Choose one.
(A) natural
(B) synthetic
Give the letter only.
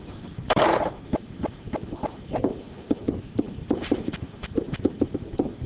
B